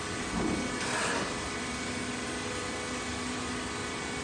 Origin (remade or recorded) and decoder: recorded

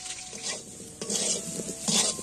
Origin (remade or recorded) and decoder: recorded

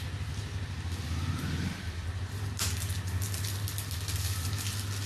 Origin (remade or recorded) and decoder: recorded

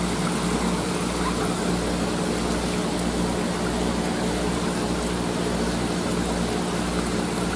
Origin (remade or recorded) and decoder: recorded